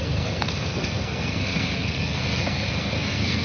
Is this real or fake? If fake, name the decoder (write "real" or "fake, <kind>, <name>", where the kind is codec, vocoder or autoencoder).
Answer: fake, codec, SNAC